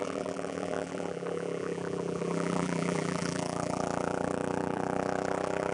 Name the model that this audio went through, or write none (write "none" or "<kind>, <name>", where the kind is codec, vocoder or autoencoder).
vocoder, BigVGAN v2